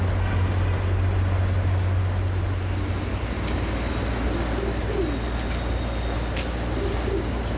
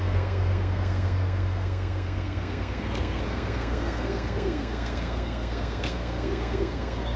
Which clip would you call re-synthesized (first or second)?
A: second